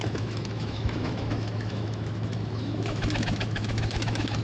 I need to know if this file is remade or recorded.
remade